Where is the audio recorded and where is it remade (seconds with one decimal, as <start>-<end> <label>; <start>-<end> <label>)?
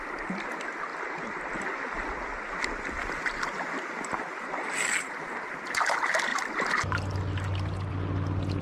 0.0-8.6 recorded